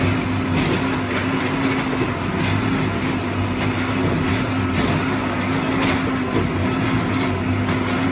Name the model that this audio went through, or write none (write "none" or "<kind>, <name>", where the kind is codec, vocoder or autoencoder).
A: none